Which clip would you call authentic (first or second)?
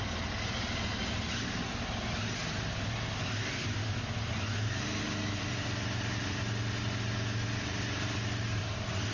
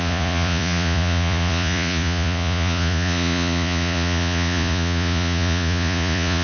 first